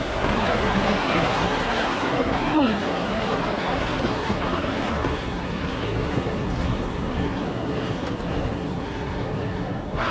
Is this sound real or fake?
fake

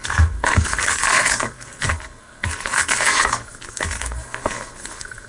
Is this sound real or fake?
fake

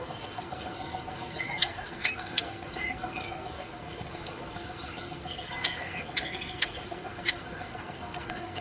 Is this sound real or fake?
fake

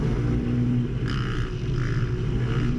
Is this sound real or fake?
real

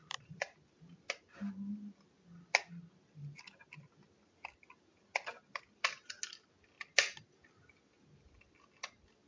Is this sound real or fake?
real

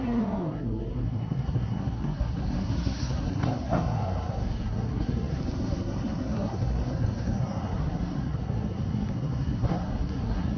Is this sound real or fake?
fake